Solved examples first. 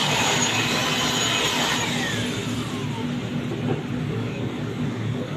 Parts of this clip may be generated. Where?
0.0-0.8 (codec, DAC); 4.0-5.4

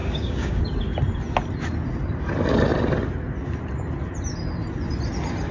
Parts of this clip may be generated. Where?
0.0-0.6 (codec, DAC)

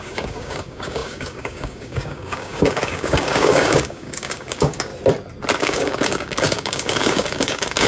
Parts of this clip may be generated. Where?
0.0-4.9 (codec, DAC); 5.6-7.9

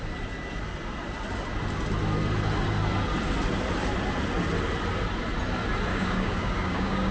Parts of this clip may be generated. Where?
5.9-7.1 (codec, DAC)